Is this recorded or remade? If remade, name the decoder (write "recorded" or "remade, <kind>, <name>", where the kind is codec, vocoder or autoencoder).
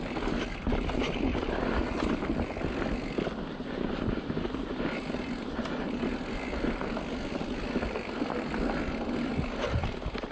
recorded